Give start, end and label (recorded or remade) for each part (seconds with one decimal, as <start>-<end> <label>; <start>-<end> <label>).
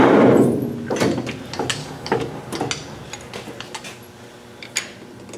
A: 0.0-1.8 recorded; 1.8-2.4 remade; 2.4-5.4 recorded